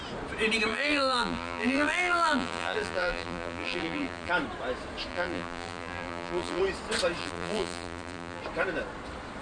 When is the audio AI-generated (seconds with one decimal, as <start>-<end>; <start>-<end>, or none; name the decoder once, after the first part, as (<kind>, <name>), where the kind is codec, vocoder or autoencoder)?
0.7-4.3 (vocoder, BigVGAN v2); 5.1-6.6; 7.2-8.4